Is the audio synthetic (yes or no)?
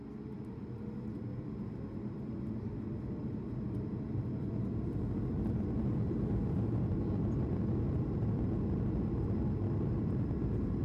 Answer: no